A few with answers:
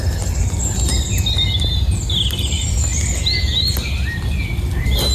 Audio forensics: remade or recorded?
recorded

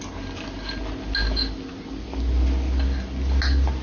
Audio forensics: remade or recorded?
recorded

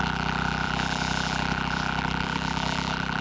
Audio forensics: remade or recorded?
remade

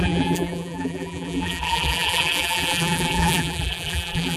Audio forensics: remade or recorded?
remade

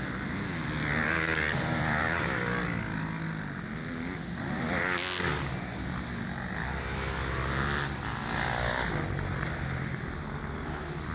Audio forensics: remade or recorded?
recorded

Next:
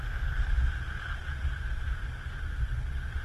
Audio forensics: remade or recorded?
recorded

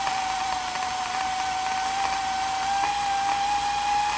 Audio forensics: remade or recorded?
recorded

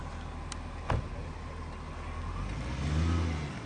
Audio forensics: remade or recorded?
recorded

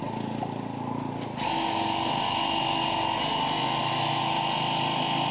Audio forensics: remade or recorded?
recorded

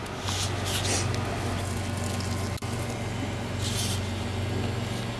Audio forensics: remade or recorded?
recorded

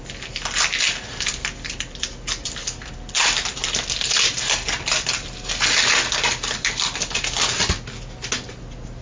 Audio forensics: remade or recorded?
recorded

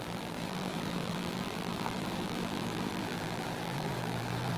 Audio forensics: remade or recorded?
remade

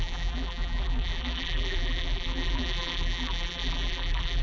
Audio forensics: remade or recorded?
remade